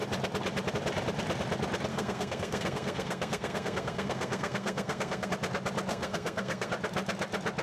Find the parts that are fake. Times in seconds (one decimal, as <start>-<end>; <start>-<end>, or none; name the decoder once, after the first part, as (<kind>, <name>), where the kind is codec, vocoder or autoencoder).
1.9-5.3 (codec, SNAC); 5.9-6.7